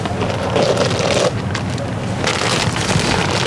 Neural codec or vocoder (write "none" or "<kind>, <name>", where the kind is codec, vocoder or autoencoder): none